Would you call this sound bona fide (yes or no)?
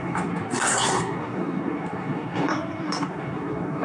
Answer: no